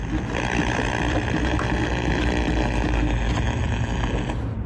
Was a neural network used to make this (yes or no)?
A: no